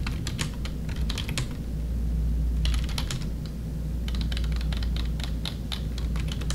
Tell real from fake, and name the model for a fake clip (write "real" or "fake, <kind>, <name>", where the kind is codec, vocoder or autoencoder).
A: real